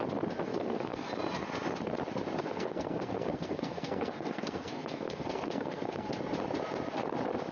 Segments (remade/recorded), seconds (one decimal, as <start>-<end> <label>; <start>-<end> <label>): 0.0-0.5 recorded; 0.5-1.1 remade; 1.1-2.4 recorded; 2.4-6.1 remade; 6.1-7.5 recorded